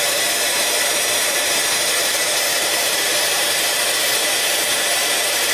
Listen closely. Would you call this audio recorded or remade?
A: remade